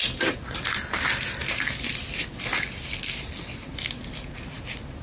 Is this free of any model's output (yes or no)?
yes